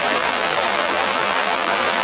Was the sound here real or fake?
fake